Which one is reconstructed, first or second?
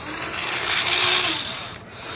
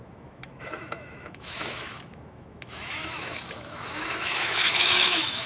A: second